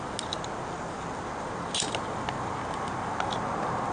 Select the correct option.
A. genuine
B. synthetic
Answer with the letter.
A